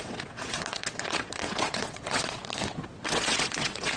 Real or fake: fake